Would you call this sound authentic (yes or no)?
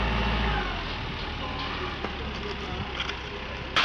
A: yes